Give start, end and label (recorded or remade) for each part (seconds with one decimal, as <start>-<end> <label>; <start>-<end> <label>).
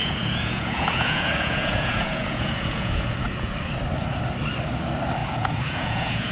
0.0-3.5 remade; 3.5-5.2 recorded; 5.2-6.3 remade